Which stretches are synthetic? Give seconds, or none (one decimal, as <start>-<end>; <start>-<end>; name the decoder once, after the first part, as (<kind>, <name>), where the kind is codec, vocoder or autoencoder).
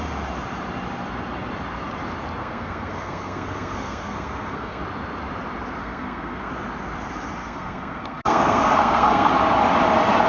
2.4-4.8 (codec, SNAC); 5.8-6.5; 7.4-9.3